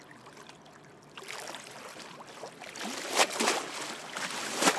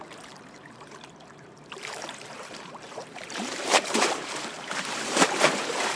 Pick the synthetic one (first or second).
second